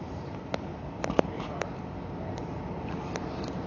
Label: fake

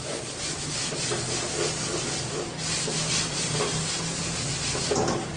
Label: real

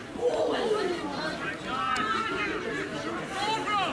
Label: real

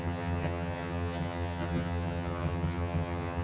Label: fake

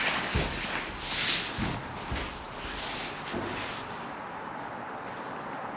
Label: real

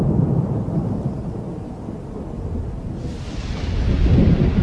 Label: real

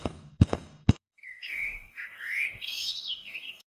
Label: fake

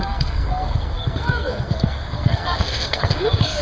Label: fake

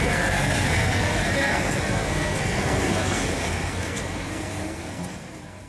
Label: fake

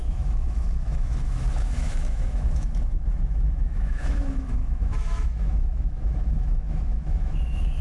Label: fake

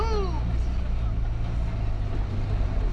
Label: real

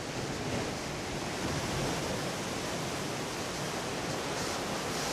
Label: real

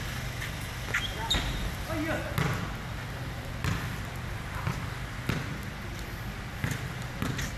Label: real